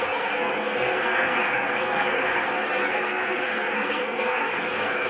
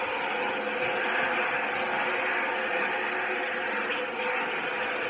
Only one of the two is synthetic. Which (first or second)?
first